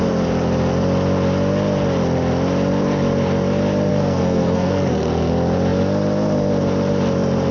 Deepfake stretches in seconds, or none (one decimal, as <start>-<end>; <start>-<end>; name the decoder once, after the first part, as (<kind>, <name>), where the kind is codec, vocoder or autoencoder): 3.9-5.3 (codec, SNAC)